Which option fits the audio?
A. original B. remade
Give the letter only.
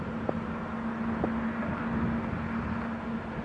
A